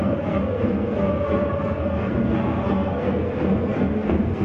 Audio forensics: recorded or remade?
remade